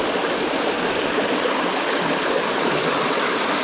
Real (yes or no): yes